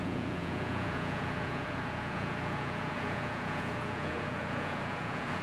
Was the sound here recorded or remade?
remade